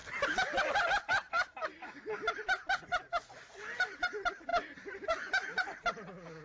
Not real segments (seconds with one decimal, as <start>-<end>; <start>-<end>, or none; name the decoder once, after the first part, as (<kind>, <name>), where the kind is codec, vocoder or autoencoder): none